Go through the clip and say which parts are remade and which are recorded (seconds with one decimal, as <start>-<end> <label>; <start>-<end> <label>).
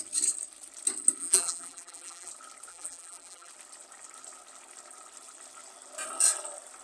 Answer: 0.0-1.2 recorded; 1.2-2.3 remade; 2.3-2.7 recorded; 2.7-3.5 remade; 3.5-6.8 recorded